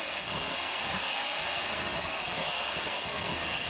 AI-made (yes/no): yes